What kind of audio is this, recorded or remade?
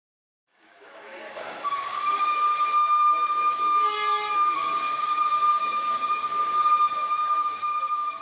remade